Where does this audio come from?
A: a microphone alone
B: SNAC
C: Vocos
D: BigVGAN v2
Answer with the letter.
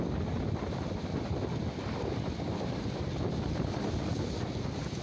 A